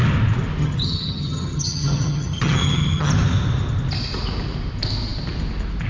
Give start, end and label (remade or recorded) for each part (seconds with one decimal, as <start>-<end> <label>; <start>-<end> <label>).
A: 0.0-0.6 recorded; 0.6-3.1 remade; 3.1-5.9 recorded